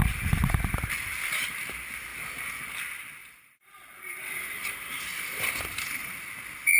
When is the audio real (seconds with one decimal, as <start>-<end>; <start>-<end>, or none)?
0.0-3.2; 6.2-6.8